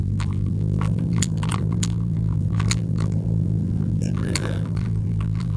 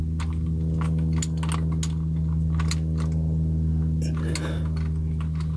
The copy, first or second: first